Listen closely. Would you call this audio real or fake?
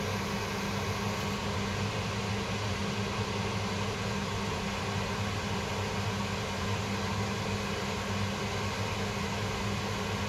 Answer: real